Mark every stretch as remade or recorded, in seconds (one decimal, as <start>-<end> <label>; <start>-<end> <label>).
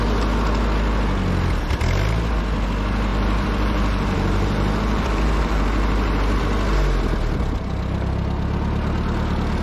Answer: 0.0-3.1 recorded; 3.1-6.4 remade; 6.4-9.6 recorded